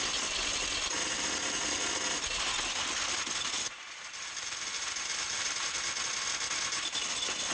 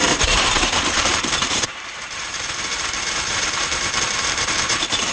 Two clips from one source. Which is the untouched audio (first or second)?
first